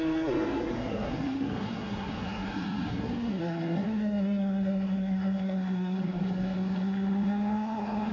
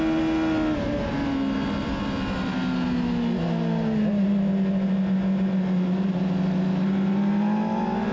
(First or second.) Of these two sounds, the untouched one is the second